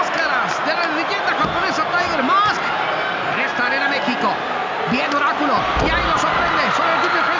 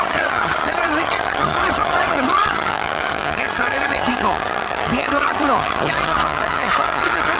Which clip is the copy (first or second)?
second